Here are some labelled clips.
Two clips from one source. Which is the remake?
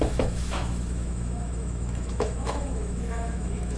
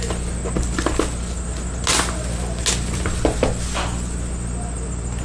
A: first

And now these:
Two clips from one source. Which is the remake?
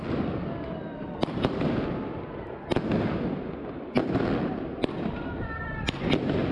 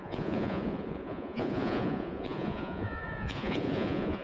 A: second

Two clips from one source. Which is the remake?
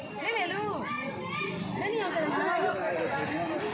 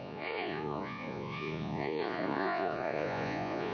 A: second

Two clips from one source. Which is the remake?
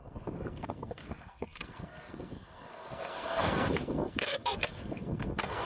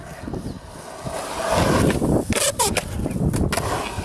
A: first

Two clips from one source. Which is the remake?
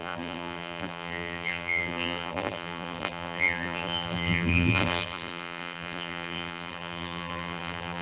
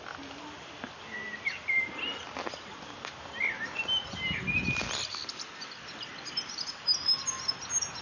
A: first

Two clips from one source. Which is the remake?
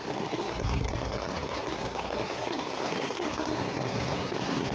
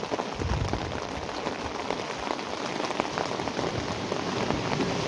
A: first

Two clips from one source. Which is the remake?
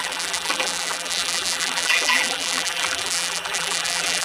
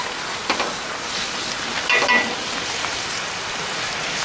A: first